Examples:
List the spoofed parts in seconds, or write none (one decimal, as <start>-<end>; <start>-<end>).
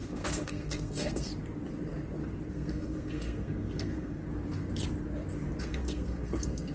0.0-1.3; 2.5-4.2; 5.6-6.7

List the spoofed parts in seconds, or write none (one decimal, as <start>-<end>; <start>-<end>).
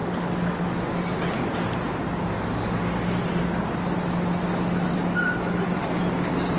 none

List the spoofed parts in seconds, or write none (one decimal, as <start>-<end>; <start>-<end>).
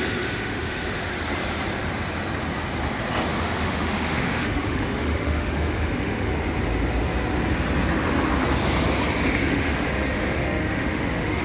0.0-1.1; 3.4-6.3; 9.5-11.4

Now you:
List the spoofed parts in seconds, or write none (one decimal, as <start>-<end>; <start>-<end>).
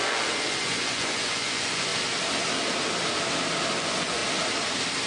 0.0-1.9; 3.8-4.2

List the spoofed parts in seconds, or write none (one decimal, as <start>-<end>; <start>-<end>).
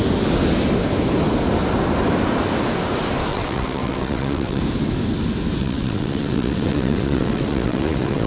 3.3-4.6; 5.6-8.3